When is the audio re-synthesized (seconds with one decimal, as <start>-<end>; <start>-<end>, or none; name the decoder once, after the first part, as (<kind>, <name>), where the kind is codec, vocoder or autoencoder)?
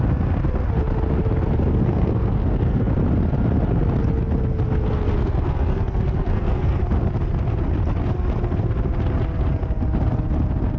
1.7-2.9 (codec, SNAC); 5.2-6.8